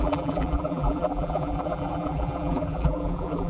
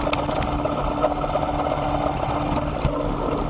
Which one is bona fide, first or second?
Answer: second